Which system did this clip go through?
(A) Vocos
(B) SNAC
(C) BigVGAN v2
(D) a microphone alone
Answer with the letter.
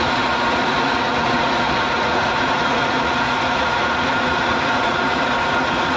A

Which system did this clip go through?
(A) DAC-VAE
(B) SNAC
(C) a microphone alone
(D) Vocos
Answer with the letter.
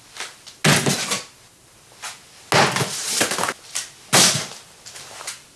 C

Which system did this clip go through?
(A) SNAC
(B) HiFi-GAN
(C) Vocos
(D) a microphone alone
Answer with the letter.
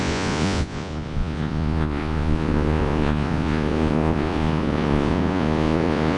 C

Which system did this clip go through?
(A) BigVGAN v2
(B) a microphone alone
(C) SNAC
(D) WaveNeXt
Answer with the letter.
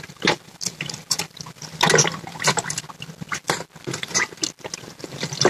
B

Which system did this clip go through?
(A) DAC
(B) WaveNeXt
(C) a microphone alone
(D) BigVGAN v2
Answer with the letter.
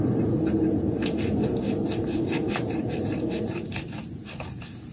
D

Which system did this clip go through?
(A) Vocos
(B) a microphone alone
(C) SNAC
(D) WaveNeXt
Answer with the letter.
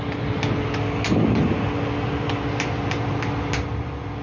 B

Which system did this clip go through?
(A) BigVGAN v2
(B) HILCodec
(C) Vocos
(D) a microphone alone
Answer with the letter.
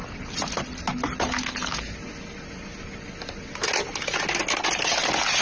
D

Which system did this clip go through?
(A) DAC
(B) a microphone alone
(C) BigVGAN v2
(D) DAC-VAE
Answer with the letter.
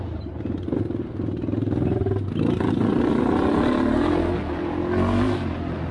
B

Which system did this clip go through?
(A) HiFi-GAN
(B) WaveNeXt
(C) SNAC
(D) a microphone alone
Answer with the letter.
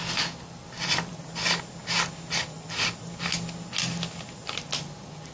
D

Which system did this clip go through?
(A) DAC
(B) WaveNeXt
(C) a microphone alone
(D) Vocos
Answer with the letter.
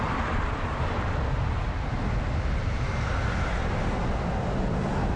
C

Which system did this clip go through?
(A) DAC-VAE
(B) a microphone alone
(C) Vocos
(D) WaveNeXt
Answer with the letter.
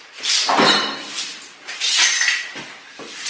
B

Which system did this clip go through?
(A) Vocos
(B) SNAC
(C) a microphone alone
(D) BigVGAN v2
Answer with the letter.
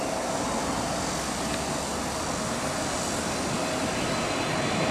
C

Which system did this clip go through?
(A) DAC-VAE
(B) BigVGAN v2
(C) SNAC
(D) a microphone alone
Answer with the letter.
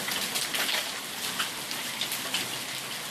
D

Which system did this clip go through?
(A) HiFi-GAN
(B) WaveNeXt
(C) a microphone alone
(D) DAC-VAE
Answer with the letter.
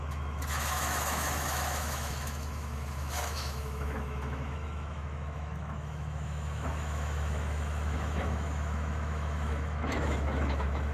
D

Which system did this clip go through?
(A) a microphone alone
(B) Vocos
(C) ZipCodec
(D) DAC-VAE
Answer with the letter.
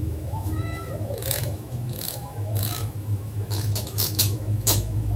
D